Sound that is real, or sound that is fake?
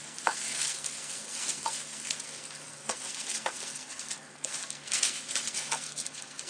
fake